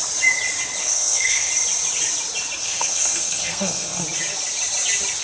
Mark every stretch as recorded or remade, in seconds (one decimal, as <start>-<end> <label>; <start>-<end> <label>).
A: 0.0-0.8 recorded; 0.8-1.5 remade; 1.5-2.6 recorded; 2.6-4.0 remade; 4.0-5.2 recorded